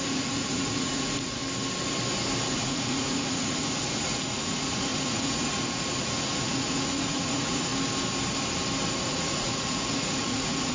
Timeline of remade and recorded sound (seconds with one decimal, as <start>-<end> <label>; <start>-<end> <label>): 0.0-1.4 remade; 1.4-2.5 recorded; 2.5-7.7 remade; 7.7-9.0 recorded; 9.0-10.7 remade